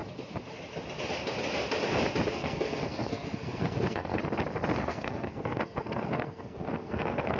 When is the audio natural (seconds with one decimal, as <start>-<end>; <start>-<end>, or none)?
0.0-2.3; 4.2-4.8